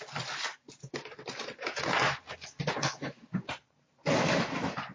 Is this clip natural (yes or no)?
yes